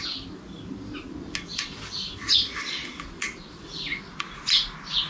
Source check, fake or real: real